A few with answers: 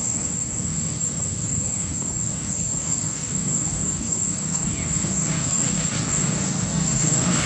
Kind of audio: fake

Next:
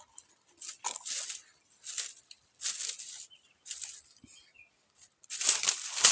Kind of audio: real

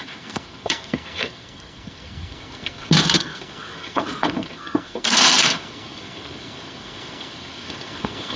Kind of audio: fake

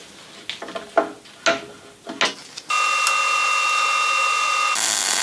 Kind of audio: real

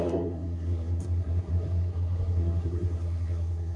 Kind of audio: fake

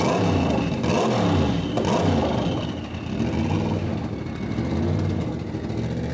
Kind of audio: real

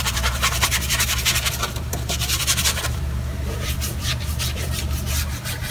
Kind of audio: fake